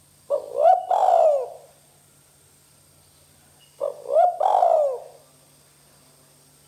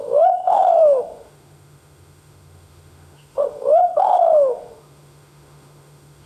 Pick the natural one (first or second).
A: first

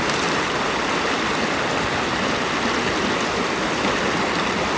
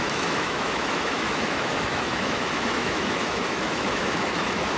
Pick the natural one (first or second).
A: first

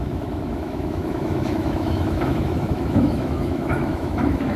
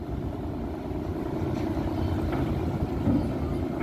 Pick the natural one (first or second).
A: second